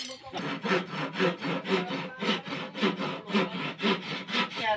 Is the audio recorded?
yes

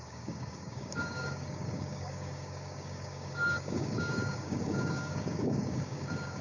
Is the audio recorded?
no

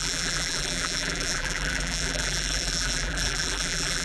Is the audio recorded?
no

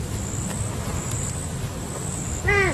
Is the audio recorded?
yes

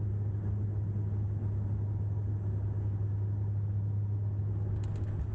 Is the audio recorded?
yes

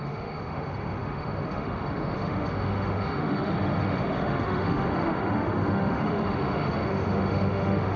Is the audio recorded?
no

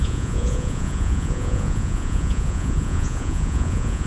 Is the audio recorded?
no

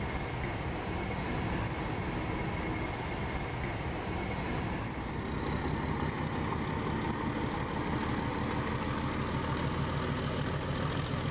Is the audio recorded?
yes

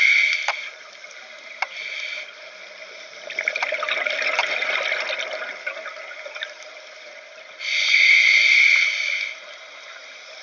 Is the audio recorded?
yes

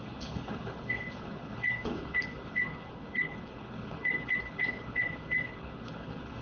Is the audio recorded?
no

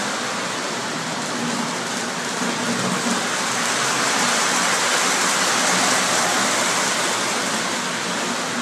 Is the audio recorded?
yes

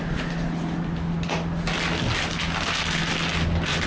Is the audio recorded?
yes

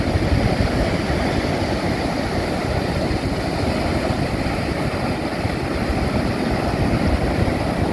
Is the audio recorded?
yes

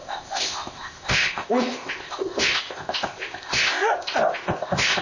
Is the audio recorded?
no